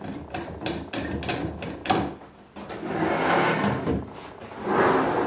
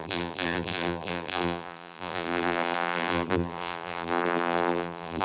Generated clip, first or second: second